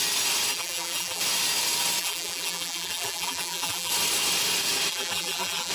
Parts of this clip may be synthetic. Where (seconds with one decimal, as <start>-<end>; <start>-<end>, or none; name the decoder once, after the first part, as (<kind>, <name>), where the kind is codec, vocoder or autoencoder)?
0.5-1.2 (vocoder, BigVGAN v2); 2.0-3.9; 4.9-5.7

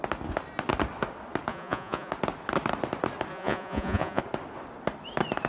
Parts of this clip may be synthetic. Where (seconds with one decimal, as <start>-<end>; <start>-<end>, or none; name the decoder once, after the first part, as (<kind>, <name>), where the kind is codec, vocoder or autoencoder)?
1.5-2.1 (vocoder, Vocos); 3.3-4.2

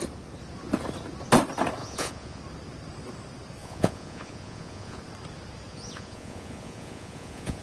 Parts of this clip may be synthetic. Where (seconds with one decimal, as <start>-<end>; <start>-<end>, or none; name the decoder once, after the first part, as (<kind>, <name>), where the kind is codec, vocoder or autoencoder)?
1.8-2.4 (vocoder, Vocos); 3.6-5.0; 5.7-7.6

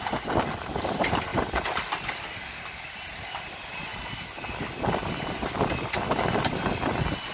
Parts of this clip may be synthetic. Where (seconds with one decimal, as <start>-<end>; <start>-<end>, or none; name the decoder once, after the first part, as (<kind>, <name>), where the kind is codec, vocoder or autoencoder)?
none

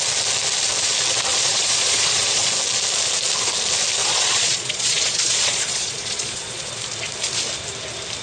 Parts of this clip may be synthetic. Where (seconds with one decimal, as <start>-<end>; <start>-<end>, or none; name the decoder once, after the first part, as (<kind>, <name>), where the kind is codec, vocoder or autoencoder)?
1.3-2.5 (vocoder, Vocos); 4.0-6.7

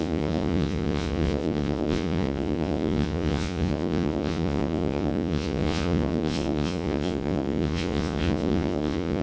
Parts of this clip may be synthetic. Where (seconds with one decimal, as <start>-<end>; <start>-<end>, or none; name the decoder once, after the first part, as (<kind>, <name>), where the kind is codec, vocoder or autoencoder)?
0.0-9.2 (vocoder, Vocos)

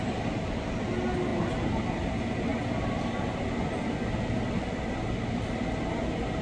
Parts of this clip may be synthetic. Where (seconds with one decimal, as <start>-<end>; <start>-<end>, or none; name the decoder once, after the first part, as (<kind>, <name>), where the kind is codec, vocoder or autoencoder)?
none

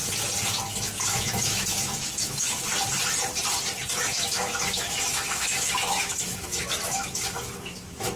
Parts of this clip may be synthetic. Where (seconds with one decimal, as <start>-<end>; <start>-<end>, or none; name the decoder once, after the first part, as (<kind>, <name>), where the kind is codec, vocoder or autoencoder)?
0.7-2.7 (autoencoder, DAC-VAE); 4.0-8.2